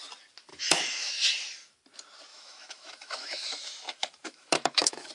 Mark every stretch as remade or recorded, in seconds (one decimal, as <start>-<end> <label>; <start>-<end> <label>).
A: 0.0-0.5 recorded; 0.5-1.1 remade; 1.1-2.3 recorded; 2.3-5.1 remade